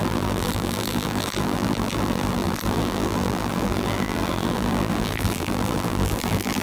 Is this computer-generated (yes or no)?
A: yes